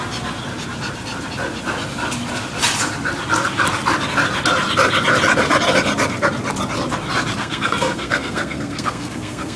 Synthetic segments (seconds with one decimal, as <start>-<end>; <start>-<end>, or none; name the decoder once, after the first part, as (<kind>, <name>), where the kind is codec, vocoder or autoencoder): 7.4-9.6 (codec, SNAC)